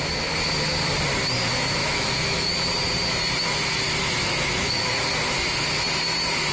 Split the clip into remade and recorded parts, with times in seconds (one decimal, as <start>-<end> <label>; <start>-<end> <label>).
0.0-1.8 recorded; 1.8-2.5 remade; 2.5-4.0 recorded; 4.0-5.0 remade; 5.0-6.5 recorded